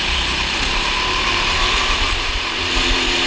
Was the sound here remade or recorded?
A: remade